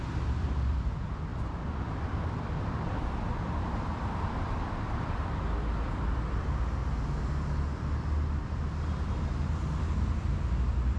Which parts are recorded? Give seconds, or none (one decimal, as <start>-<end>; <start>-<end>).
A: 6.8-10.0